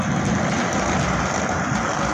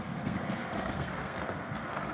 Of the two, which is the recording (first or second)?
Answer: first